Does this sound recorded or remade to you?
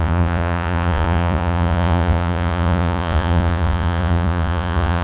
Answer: remade